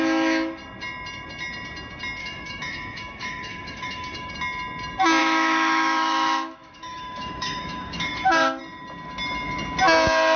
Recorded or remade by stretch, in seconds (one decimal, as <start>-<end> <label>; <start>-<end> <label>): 0.0-2.2 recorded; 2.2-4.3 remade; 4.3-5.2 recorded; 5.2-8.6 remade; 8.6-10.4 recorded